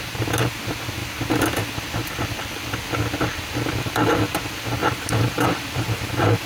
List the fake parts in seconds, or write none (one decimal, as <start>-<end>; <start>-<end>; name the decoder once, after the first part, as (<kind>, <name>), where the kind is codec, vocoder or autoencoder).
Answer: 4.8-6.5 (vocoder, BigVGAN v2)